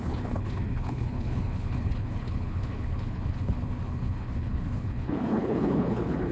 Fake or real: fake